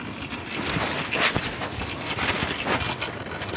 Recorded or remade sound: recorded